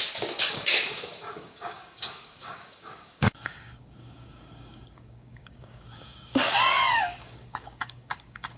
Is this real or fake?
fake